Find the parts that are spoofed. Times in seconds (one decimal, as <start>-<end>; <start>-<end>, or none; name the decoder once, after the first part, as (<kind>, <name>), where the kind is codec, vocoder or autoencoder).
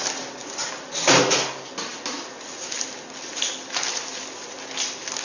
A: 0.4-1.2 (vocoder, BigVGAN v2)